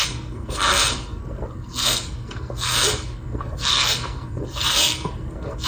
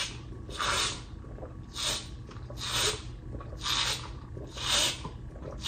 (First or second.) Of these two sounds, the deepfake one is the first